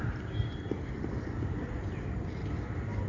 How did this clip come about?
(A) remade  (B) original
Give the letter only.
B